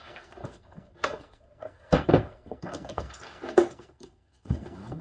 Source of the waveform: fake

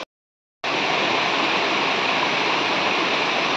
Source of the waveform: real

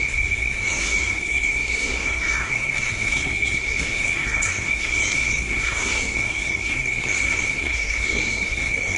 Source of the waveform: fake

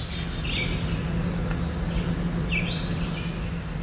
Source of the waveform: real